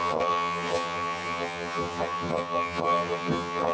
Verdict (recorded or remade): remade